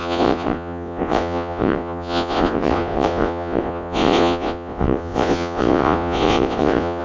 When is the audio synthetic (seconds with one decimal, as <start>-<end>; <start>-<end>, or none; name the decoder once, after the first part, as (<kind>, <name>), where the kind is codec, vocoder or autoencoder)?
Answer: 0.0-7.0 (vocoder, Vocos)